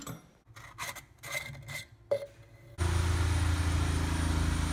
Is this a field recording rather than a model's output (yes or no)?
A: yes